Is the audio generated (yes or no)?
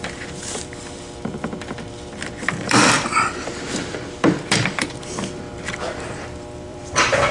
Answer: yes